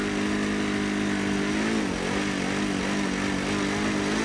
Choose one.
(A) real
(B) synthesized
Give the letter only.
A